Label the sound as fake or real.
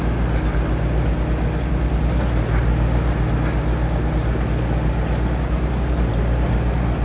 real